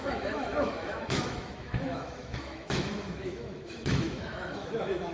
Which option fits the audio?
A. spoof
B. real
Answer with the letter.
A